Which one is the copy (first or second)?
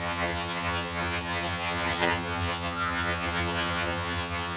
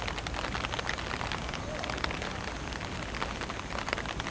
first